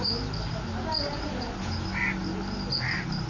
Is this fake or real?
real